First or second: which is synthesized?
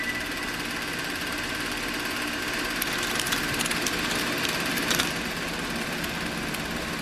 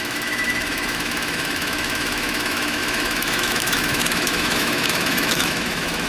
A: second